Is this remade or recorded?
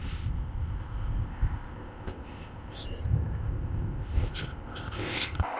remade